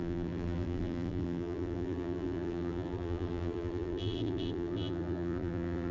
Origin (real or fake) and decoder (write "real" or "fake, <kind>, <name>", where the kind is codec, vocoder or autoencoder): fake, vocoder, BigVGAN v2